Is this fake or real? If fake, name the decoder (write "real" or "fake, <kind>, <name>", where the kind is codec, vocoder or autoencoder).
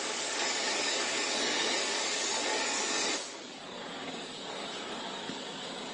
fake, codec, DAC